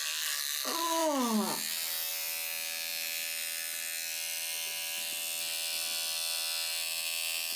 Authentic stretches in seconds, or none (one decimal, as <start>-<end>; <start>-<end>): 0.0-7.6